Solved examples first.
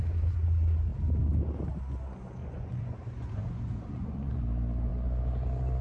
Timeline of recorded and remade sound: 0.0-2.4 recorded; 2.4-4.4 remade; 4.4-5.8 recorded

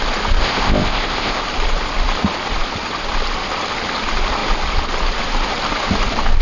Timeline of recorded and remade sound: 0.0-0.4 recorded; 0.4-1.4 remade; 1.4-6.4 recorded

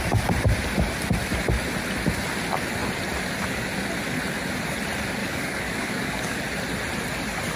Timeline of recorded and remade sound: 0.0-5.2 recorded; 5.2-6.4 remade; 6.4-7.6 recorded

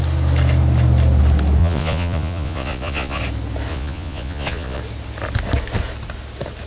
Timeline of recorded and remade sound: 0.0-1.6 recorded; 1.6-3.2 remade; 3.2-3.7 recorded; 3.7-4.8 remade; 4.8-6.7 recorded